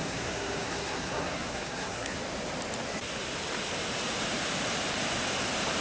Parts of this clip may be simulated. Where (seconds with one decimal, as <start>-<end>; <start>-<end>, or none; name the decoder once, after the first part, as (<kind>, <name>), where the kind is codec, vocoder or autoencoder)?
0.0-2.2 (codec, SNAC)